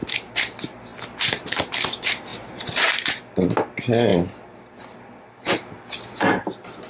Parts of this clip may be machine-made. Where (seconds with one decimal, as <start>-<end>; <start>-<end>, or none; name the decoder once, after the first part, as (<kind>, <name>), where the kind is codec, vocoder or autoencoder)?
2.3-3.2 (vocoder, BigVGAN v2)